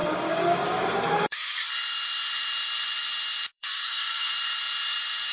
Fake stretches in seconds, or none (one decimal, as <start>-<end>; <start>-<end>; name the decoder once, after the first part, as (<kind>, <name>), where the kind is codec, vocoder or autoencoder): 0.0-1.7 (codec, DAC); 3.5-4.3